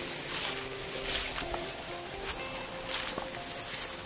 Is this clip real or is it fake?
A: real